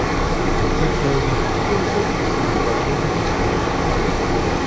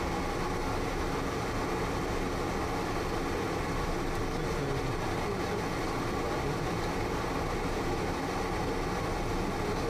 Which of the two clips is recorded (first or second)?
second